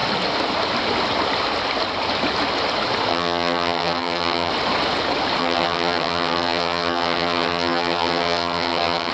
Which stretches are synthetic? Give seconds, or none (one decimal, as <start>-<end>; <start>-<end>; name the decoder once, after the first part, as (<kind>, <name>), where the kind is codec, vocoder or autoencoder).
3.1-4.5 (vocoder, HiFi-GAN); 5.4-9.1